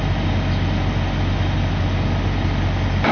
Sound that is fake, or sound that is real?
real